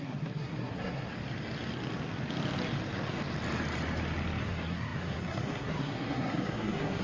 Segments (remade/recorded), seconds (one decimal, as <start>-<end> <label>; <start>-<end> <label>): 0.0-1.1 remade; 1.1-4.4 recorded; 4.4-7.0 remade

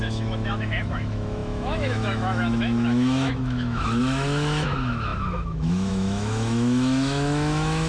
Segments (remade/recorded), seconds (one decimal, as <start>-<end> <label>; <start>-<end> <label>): 0.0-7.9 remade

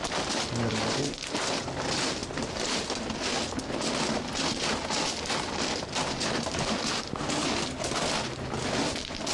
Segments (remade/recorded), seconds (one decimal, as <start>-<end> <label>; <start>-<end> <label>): 0.0-9.3 recorded